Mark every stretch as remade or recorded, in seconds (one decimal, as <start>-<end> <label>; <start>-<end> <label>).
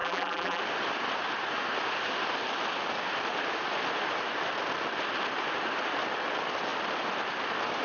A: 0.0-0.6 remade; 0.6-7.8 recorded